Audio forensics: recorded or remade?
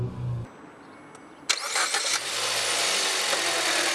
recorded